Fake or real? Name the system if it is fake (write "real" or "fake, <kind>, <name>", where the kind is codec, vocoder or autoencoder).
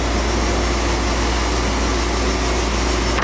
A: real